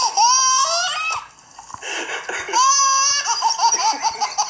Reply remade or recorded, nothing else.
recorded